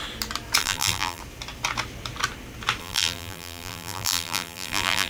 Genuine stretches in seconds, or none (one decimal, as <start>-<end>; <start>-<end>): 0.0-0.6; 1.2-2.8